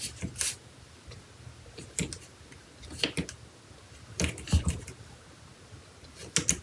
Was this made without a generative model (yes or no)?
yes